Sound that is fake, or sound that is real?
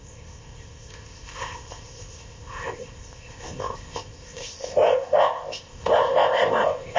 fake